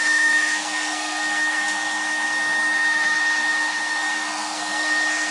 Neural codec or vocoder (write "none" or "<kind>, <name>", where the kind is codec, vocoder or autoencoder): codec, SNAC